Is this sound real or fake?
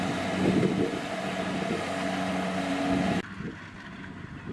real